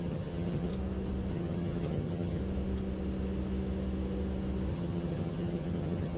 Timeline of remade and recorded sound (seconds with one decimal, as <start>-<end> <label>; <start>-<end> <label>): 0.0-0.7 remade; 0.7-1.3 recorded; 1.3-2.4 remade; 2.4-4.7 recorded; 4.7-6.2 remade